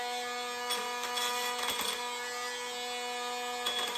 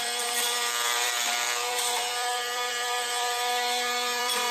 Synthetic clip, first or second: second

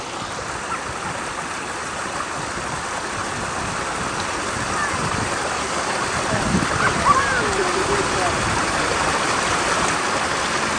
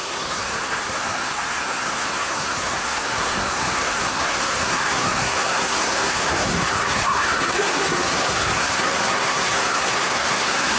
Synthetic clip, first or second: second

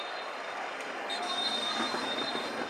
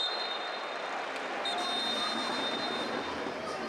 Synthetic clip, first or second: first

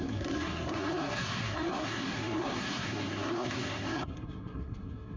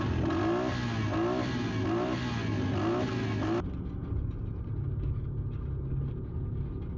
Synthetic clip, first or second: first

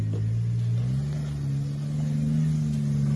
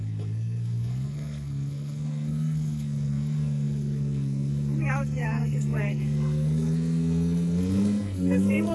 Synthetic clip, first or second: second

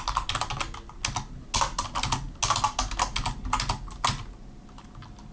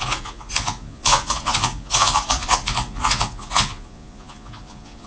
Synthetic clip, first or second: second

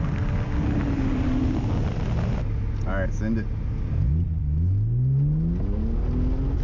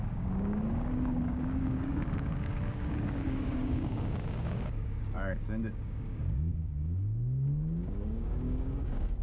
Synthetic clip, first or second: second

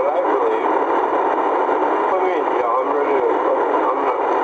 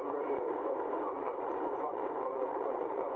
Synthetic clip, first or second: second